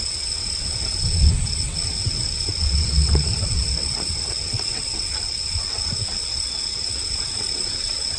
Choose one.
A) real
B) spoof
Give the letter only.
B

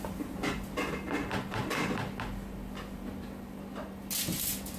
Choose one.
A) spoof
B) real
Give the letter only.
B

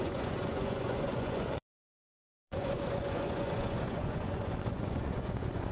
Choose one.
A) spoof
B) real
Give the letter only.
A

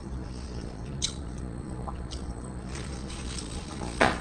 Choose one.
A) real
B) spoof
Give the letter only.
B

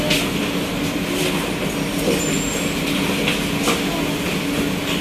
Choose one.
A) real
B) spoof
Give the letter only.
A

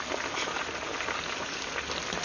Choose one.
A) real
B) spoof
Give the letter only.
A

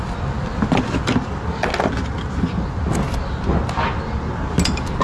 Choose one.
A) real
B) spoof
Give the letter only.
A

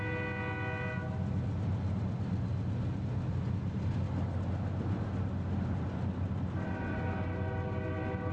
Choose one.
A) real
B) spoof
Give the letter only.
A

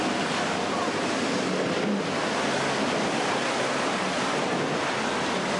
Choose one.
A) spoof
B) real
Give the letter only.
A